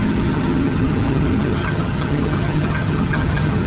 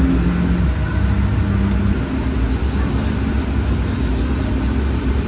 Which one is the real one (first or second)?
second